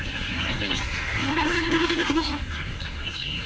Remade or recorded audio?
remade